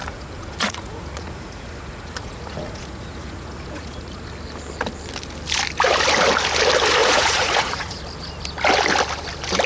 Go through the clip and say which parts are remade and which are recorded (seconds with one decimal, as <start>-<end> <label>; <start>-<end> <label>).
0.0-4.2 remade; 4.2-7.0 recorded; 7.0-8.0 remade; 8.0-9.7 recorded